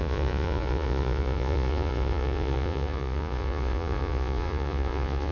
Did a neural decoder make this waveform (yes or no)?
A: yes